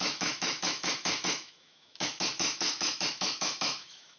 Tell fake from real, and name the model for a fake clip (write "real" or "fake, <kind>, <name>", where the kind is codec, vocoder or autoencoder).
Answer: fake, autoencoder, DAC-VAE